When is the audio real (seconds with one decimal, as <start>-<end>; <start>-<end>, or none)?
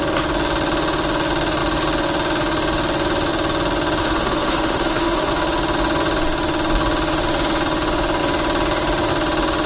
0.0-4.0; 5.3-9.7